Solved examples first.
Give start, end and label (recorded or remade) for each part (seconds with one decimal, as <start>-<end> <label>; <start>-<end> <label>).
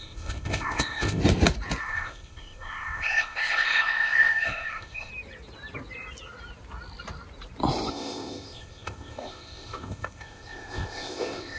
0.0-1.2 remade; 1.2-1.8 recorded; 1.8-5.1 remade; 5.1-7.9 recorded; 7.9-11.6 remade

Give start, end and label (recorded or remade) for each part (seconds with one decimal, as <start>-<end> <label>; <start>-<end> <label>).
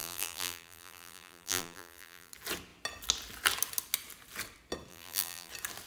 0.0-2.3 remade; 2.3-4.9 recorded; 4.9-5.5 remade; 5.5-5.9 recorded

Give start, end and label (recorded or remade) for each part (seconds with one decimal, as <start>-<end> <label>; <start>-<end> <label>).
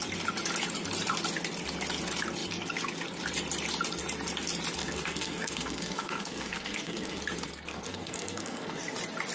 0.0-4.8 recorded; 4.8-7.2 remade; 7.2-7.7 recorded; 7.7-8.8 remade; 8.8-9.3 recorded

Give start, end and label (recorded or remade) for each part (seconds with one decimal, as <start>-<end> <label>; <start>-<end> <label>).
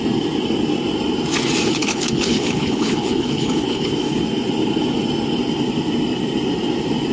0.0-1.7 recorded; 1.7-3.9 remade; 3.9-7.1 recorded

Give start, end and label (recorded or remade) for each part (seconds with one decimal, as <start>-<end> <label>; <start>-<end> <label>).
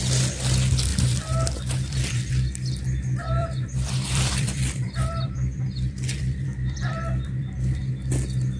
0.0-0.9 recorded; 0.9-2.3 remade; 2.3-3.4 recorded; 3.4-7.9 remade; 7.9-8.6 recorded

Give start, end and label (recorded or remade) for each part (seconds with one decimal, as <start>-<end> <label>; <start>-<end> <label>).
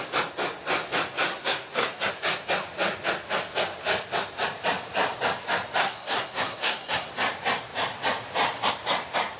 0.0-1.3 recorded; 1.3-2.1 remade; 2.1-5.8 recorded; 5.8-7.1 remade; 7.1-9.4 recorded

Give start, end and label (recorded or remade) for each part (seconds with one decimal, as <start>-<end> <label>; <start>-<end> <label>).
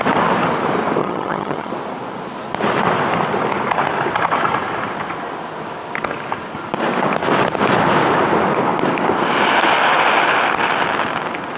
0.0-1.0 recorded; 1.0-1.7 remade; 1.7-11.6 recorded